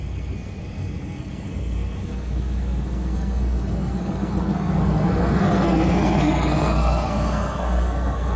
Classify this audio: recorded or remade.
remade